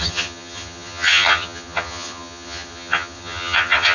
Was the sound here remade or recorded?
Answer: remade